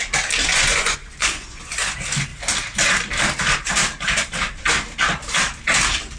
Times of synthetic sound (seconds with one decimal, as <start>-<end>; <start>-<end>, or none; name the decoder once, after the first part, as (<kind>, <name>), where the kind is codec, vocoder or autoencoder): 0.5-1.8 (vocoder, Vocos)